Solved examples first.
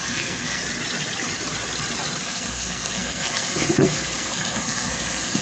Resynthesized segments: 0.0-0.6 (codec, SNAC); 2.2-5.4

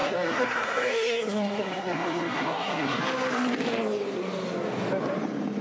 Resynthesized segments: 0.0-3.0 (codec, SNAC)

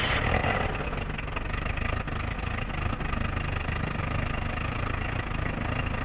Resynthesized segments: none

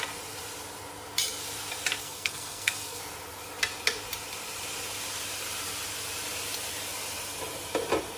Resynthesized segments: 2.0-3.0 (codec, SNAC)

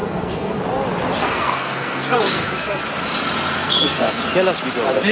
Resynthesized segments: 0.0-0.6 (codec, SNAC); 1.2-2.8; 3.6-4.2

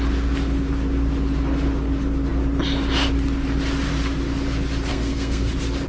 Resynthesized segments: 4.9-5.5 (codec, SNAC)

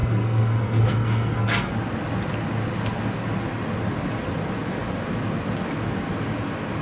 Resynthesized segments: 0.0-1.7 (codec, SNAC)

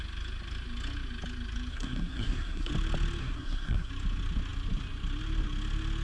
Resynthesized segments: 1.7-2.7 (codec, SNAC); 3.2-3.9